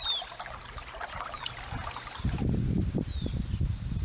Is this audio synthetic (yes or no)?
yes